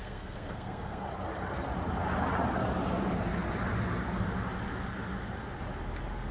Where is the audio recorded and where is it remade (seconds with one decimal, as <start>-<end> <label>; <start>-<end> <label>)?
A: 0.0-1.0 remade; 1.0-6.3 recorded